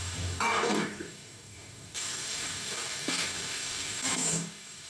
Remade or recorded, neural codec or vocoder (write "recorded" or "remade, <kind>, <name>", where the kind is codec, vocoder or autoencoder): remade, codec, DAC